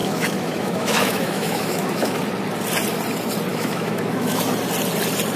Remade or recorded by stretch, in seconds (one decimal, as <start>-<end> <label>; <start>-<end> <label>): 0.0-2.2 remade; 2.2-3.5 recorded; 3.5-4.4 remade; 4.4-5.4 recorded